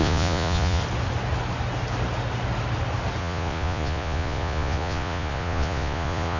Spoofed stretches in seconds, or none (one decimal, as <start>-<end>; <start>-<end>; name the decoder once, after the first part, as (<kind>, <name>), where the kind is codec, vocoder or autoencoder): 0.0-0.8 (vocoder, Vocos); 3.2-6.4